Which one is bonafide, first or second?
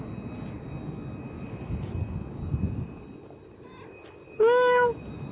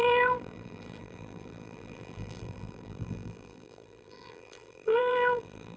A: first